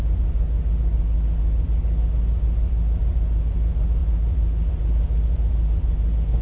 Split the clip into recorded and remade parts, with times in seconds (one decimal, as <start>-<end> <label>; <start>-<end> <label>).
0.0-6.4 recorded